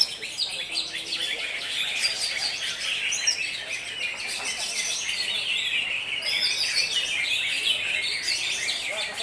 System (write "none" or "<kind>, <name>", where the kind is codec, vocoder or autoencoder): none